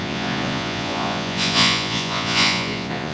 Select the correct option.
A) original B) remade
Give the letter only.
B